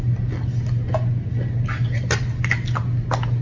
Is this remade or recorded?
recorded